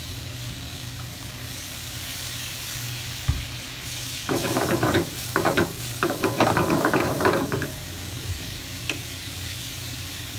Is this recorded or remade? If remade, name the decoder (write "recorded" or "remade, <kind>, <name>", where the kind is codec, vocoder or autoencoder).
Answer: remade, codec, DAC